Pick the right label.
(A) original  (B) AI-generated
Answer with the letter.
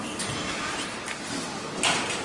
A